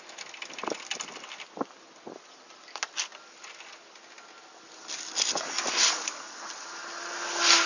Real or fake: real